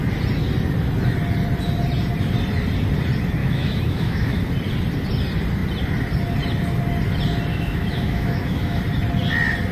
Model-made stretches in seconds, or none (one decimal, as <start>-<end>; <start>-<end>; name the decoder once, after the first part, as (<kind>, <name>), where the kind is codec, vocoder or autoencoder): 3.4-4.4 (autoencoder, DAC-VAE); 7.5-8.8